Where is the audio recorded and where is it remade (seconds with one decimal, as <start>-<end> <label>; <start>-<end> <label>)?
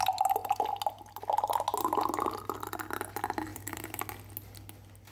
0.0-3.5 recorded; 3.5-4.0 remade; 4.0-5.1 recorded